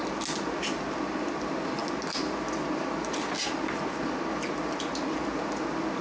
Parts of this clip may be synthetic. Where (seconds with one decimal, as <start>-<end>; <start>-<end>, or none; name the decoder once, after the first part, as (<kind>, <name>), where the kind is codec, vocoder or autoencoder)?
none